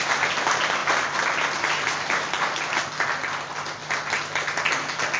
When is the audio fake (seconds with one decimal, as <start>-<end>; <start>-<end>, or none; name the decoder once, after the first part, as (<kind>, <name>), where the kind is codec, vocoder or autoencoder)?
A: none